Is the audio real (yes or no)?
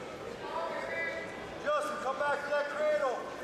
yes